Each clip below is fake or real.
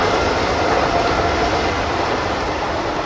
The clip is real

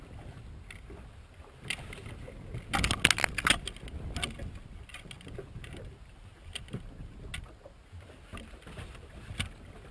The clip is real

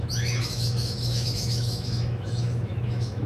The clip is fake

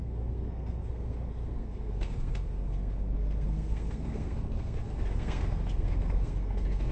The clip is fake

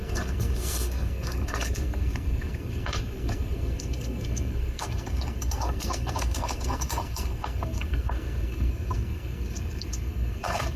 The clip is fake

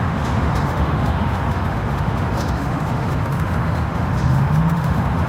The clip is fake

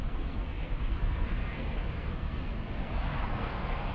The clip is fake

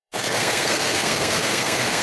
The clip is fake